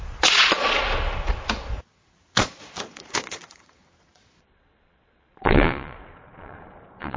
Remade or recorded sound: remade